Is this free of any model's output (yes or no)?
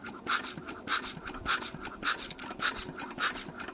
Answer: yes